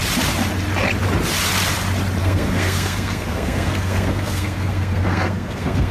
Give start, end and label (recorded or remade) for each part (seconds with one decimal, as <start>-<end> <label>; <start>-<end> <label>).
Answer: 0.0-2.2 recorded; 2.2-5.9 remade